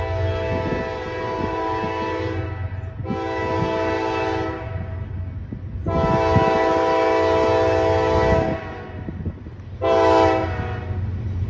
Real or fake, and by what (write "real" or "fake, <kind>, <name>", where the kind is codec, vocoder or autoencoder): real